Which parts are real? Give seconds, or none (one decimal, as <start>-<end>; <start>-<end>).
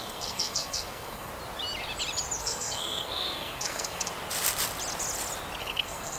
1.3-2.4; 4.1-5.6